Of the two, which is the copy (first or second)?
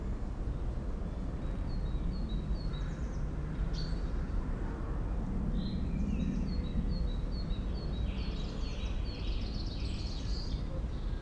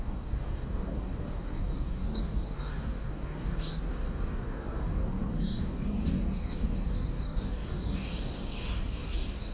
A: second